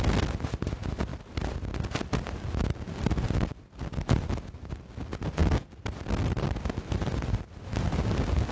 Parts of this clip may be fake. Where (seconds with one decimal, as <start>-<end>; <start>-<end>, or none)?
none